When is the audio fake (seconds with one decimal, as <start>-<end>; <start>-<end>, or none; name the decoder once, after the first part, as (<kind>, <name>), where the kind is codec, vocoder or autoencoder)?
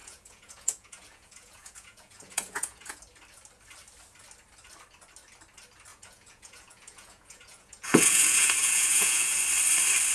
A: 0.0-3.0 (vocoder, Vocos); 5.9-9.4